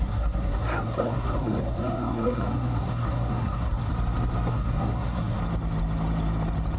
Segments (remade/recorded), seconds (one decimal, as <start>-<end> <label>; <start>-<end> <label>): 0.0-3.9 remade; 3.9-4.5 recorded; 4.5-5.4 remade; 5.4-6.8 recorded

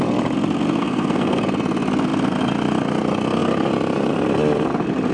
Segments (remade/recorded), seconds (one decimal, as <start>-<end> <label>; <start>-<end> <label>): 0.0-0.8 recorded; 0.8-1.4 remade; 1.4-5.1 recorded

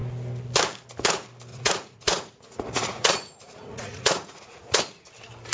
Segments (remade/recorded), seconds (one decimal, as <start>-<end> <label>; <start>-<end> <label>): 0.0-1.5 recorded; 1.5-4.8 remade; 4.8-5.5 recorded

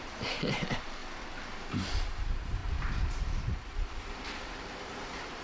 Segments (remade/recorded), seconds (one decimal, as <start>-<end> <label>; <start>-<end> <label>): 0.0-1.0 remade; 1.0-1.6 recorded; 1.6-5.4 remade

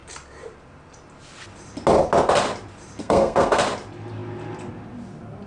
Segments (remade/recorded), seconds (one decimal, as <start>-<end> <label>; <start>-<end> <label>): 0.0-3.0 recorded; 3.0-3.6 remade; 3.6-5.5 recorded